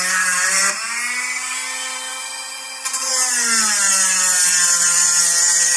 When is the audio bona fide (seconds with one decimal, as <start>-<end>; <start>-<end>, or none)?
0.0-5.8